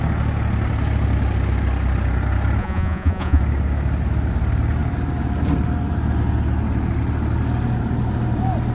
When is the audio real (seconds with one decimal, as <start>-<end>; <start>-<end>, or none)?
0.0-2.6; 3.4-8.7